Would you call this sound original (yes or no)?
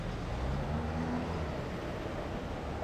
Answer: yes